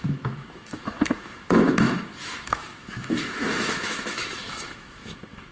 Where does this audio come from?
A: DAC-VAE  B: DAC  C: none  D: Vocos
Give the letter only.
A